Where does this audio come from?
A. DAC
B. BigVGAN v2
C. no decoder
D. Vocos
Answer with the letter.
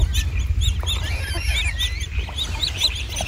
C